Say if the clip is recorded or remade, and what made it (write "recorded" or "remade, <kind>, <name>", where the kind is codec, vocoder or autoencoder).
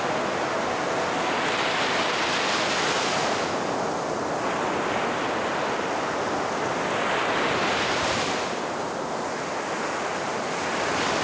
recorded